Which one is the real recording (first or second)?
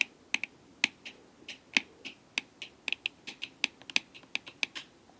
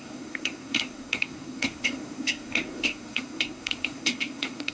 first